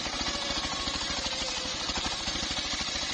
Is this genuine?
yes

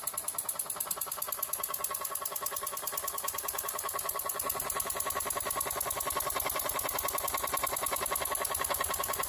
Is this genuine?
yes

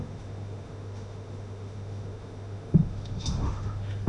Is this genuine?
no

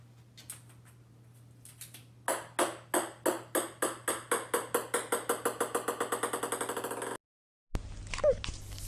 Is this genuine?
yes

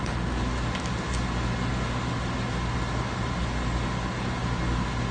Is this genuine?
yes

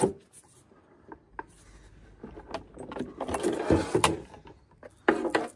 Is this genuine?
yes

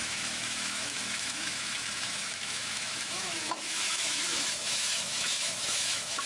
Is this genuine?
no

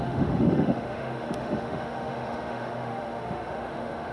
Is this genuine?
no